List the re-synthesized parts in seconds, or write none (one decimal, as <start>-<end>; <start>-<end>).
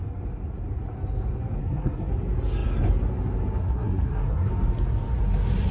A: 1.6-2.1; 3.6-4.5